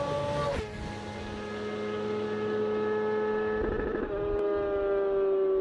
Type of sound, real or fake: real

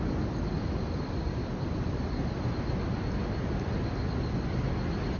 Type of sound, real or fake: real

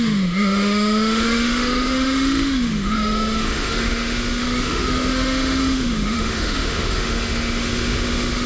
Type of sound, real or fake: fake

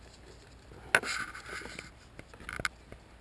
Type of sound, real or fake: real